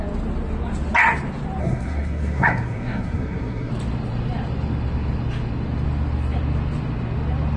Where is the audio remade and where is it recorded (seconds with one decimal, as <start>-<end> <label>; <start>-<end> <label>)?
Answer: 0.0-1.6 recorded; 1.6-3.7 remade; 3.7-7.6 recorded